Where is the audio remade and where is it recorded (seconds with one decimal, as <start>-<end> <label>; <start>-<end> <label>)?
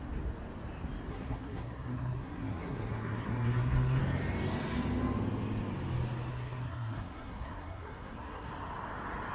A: 0.0-1.1 recorded; 1.1-4.0 remade; 4.0-6.3 recorded; 6.3-8.5 remade; 8.5-9.3 recorded